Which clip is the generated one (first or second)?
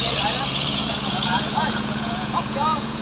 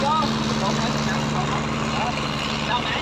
first